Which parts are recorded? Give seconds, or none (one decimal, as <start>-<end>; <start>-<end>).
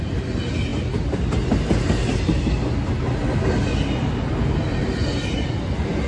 0.0-6.1